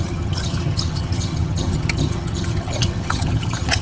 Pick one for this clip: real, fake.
fake